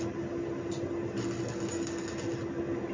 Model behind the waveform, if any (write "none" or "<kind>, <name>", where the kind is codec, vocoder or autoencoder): none